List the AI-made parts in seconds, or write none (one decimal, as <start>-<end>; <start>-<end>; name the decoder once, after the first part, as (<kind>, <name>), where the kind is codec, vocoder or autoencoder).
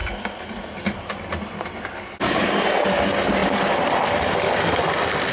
none